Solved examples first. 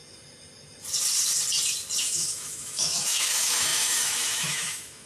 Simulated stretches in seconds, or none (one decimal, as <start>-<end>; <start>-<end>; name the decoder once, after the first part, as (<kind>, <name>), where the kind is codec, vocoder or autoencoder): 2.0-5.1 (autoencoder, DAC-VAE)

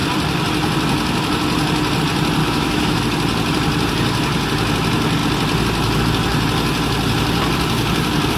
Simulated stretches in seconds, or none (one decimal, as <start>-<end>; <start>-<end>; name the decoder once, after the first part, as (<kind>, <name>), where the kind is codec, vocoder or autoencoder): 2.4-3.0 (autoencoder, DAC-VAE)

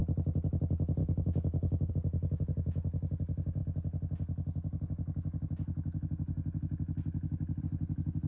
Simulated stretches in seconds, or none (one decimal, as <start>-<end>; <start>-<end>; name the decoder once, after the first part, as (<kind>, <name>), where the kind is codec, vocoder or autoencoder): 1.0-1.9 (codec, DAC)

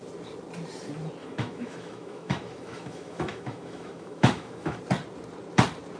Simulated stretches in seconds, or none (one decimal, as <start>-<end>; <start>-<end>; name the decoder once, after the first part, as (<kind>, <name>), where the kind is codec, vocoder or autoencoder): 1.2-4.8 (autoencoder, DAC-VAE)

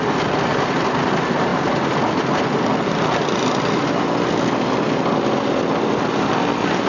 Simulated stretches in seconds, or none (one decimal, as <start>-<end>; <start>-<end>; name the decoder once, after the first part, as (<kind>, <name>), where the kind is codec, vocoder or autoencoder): none

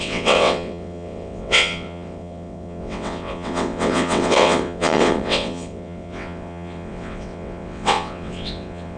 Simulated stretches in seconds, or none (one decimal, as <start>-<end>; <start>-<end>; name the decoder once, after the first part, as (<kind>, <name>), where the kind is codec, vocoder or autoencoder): 0.0-9.0 (vocoder, WaveNeXt)

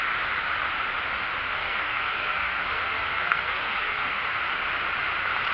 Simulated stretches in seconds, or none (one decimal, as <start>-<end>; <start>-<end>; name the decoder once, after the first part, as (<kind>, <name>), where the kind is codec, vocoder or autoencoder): 1.5-4.4 (codec, SNAC)

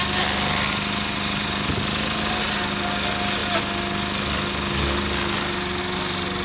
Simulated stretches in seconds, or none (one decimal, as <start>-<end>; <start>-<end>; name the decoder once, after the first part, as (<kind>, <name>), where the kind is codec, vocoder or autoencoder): none